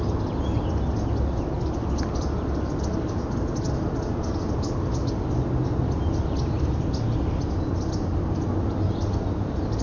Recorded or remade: recorded